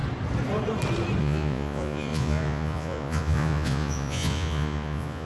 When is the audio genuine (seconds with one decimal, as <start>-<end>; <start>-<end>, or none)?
0.0-1.2